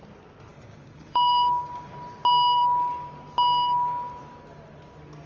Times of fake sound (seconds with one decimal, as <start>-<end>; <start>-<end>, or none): 0.5-1.9